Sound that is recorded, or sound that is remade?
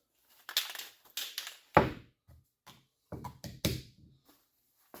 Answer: recorded